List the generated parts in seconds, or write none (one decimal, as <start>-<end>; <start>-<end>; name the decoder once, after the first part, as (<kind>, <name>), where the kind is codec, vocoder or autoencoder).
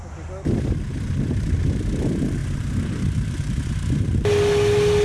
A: none